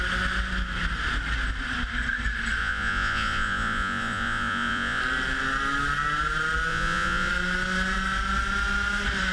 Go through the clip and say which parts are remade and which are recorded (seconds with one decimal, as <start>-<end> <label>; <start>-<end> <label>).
0.0-2.6 recorded; 2.6-5.0 remade; 5.0-6.7 recorded; 6.7-7.3 remade; 7.3-9.3 recorded